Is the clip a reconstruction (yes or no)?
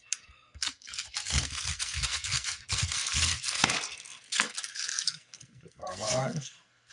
yes